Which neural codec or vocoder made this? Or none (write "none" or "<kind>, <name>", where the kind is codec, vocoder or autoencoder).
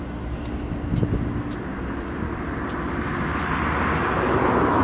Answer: none